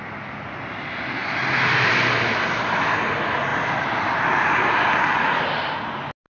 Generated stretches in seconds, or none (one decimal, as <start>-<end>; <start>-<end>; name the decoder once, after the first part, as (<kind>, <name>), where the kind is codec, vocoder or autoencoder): none